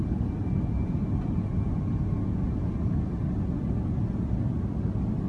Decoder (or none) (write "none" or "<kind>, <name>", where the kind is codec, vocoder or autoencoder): none